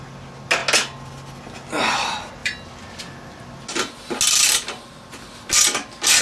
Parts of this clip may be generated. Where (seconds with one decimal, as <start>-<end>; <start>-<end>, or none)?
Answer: none